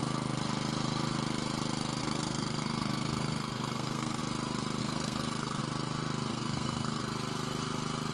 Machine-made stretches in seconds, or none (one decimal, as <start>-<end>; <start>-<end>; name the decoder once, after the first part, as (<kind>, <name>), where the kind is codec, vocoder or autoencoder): 2.0-4.2 (codec, SNAC); 4.8-5.6; 6.3-7.0